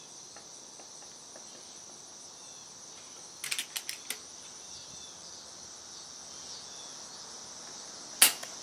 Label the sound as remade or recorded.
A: recorded